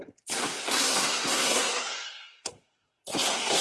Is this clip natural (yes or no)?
no